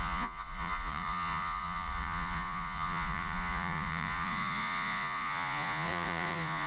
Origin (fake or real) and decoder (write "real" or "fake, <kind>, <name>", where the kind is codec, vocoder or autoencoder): fake, vocoder, Vocos